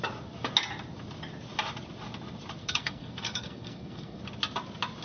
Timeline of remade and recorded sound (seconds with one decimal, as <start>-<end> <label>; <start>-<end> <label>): 0.0-2.6 recorded; 2.6-4.2 remade; 4.2-5.0 recorded